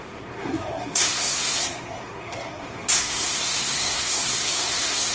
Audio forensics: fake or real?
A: fake